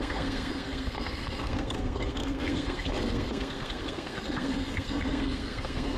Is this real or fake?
fake